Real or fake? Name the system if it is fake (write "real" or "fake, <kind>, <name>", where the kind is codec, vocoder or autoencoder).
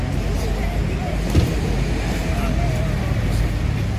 real